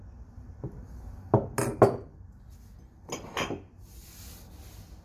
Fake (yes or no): no